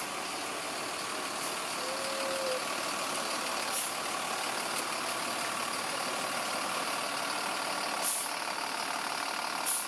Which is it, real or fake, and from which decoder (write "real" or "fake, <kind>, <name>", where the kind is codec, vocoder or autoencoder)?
real